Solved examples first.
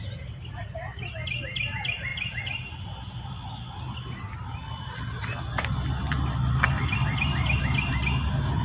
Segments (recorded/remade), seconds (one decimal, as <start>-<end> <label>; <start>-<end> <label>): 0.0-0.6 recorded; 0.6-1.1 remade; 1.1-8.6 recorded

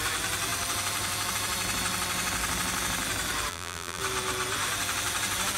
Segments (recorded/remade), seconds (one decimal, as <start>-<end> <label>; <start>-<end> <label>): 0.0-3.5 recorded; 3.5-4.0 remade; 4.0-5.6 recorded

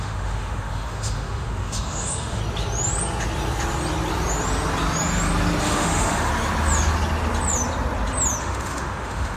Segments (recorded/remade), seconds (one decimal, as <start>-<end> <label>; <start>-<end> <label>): 0.0-2.4 remade; 2.4-5.6 recorded; 5.6-6.3 remade; 6.3-8.4 recorded; 8.4-9.4 remade